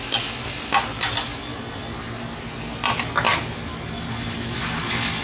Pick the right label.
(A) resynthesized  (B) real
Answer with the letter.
B